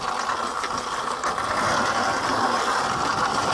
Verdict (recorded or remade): recorded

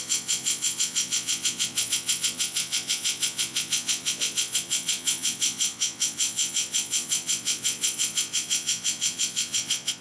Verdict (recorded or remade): remade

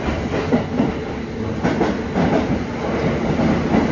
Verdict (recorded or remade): recorded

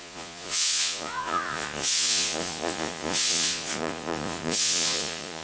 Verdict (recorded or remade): remade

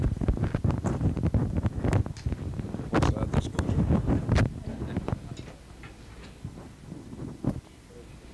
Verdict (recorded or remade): recorded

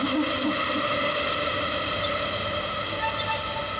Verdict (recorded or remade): recorded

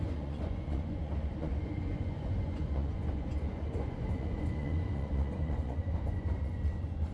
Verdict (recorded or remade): remade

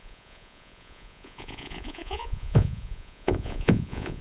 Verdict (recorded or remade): remade